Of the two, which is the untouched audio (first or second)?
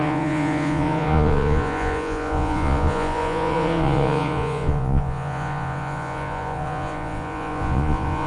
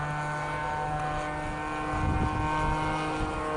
second